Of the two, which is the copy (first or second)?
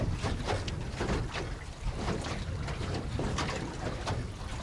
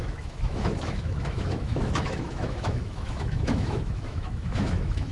second